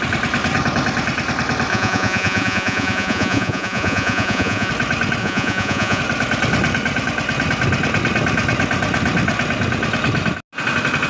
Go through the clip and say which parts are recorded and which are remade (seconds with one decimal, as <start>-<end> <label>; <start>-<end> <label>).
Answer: 0.0-1.7 recorded; 1.7-4.7 remade; 4.7-5.2 recorded; 5.2-6.0 remade; 6.0-11.1 recorded